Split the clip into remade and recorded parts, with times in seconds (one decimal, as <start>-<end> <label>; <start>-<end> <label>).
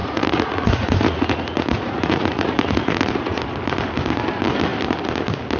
0.0-3.4 remade; 3.4-5.6 recorded